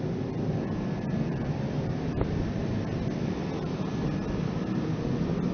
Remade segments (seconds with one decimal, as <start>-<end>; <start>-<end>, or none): 1.3-2.6